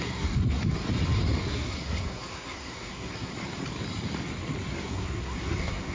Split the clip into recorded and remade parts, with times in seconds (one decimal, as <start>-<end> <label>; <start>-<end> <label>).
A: 0.0-0.6 remade; 0.6-1.4 recorded; 1.4-3.3 remade; 3.3-4.8 recorded; 4.8-5.9 remade